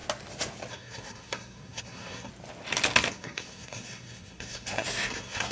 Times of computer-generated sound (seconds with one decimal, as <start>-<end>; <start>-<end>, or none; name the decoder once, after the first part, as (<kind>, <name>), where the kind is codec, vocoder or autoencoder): 0.7-2.3 (codec, SNAC); 3.1-5.5